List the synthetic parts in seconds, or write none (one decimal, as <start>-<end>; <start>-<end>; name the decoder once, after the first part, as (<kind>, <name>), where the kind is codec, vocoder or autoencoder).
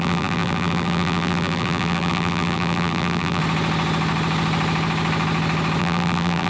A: 0.0-3.4 (vocoder, BigVGAN v2); 5.8-6.5